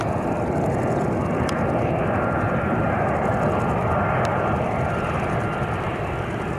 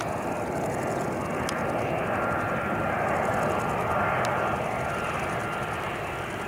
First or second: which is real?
second